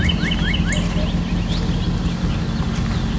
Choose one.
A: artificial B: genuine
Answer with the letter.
B